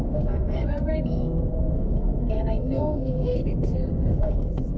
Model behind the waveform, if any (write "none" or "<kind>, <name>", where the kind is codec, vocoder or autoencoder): codec, SNAC